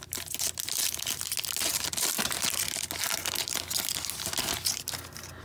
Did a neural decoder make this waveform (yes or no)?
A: no